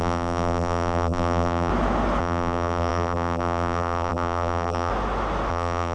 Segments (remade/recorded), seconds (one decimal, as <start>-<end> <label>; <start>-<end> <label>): 0.0-1.7 remade; 1.7-2.2 recorded; 2.2-4.9 remade; 4.9-5.5 recorded; 5.5-5.9 remade